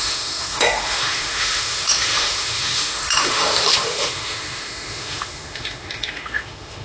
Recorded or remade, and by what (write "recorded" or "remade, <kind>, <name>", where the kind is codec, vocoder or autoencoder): remade, autoencoder, DAC-VAE